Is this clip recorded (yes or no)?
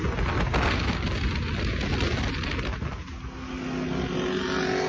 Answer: yes